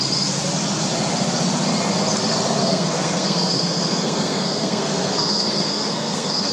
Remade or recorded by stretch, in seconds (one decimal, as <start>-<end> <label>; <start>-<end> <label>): 0.0-2.6 recorded; 2.6-6.5 remade